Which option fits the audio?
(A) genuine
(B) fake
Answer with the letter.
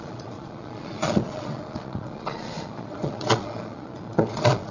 B